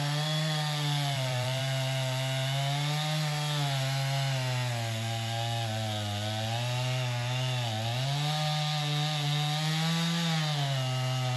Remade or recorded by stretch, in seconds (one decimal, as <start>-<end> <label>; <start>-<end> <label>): 0.0-1.6 remade; 1.6-11.4 recorded